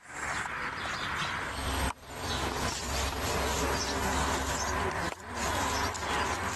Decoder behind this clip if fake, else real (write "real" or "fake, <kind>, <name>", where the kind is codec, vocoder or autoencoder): real